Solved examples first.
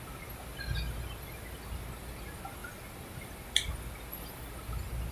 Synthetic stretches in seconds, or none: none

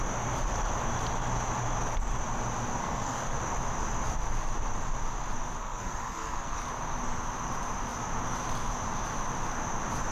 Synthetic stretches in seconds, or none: 2.8-3.4 (codec, SNAC); 5.6-6.6